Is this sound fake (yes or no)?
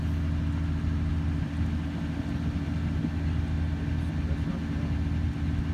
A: no